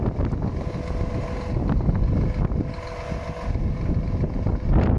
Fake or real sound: real